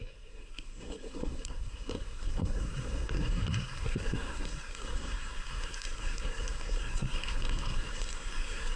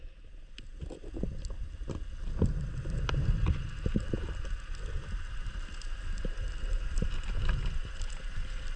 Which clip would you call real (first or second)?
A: second